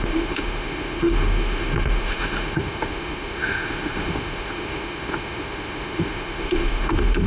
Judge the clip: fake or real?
fake